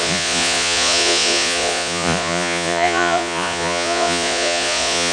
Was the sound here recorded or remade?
remade